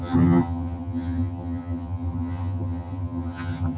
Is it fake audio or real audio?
fake